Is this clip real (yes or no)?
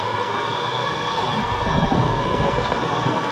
no